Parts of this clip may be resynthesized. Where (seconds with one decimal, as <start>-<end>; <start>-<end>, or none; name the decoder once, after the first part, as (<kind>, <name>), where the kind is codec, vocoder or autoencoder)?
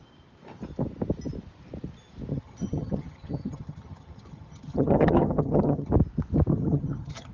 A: 2.3-5.9 (vocoder, HiFi-GAN); 6.5-7.3